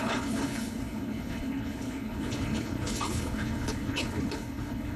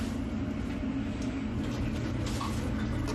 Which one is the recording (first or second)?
second